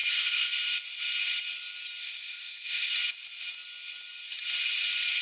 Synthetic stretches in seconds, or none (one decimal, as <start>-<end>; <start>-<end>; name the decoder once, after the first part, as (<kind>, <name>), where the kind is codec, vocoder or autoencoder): 0.0-0.5 (codec, ZipCodec); 2.0-2.9